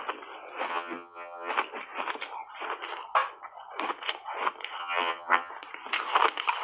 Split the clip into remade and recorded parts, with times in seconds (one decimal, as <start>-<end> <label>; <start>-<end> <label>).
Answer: 0.0-0.7 recorded; 0.7-1.5 remade; 1.5-4.8 recorded; 4.8-5.5 remade; 5.5-6.6 recorded